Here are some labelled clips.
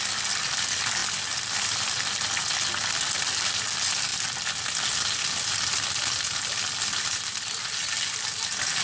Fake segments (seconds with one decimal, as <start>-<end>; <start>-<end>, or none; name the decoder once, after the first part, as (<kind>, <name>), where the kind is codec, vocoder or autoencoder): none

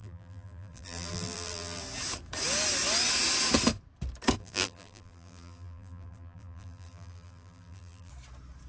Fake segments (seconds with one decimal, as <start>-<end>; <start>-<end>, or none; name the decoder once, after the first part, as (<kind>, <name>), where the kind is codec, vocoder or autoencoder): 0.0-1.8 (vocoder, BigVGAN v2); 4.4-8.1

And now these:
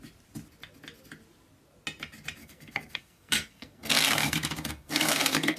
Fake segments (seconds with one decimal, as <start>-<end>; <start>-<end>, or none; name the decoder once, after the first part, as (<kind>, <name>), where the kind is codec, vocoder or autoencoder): 2.4-5.6 (codec, SNAC)

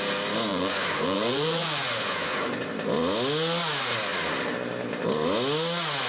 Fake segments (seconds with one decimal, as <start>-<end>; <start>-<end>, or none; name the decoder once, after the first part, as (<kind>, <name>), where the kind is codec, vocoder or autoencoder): 0.5-2.7 (vocoder, Vocos)

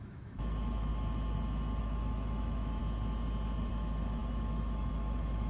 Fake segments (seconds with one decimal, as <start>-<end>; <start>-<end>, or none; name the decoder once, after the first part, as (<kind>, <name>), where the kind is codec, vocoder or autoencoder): 0.0-0.9 (autoencoder, DAC-VAE); 1.8-2.8; 3.7-5.5

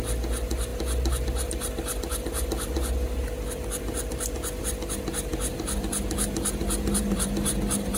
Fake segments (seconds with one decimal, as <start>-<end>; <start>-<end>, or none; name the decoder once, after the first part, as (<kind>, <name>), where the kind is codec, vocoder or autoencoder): none